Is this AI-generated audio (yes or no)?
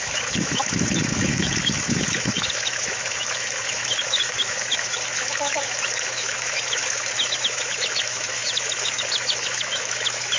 yes